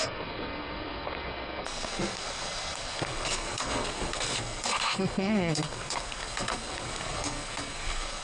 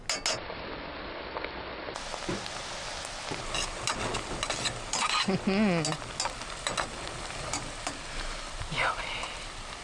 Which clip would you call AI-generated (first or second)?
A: first